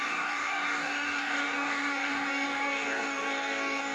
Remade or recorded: remade